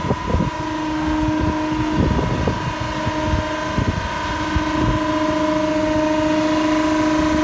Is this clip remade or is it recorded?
recorded